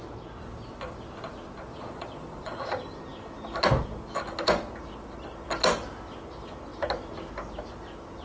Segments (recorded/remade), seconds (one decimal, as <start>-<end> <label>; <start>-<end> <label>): 0.0-1.7 recorded; 1.7-2.6 remade; 2.6-8.2 recorded